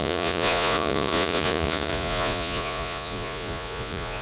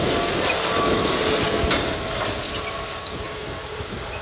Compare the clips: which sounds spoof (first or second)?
first